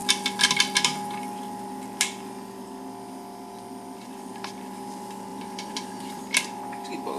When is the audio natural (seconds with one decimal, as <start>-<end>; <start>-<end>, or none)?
0.0-5.3; 6.2-7.2